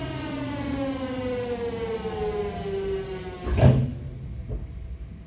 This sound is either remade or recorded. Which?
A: recorded